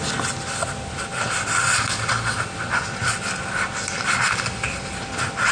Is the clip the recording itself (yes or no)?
yes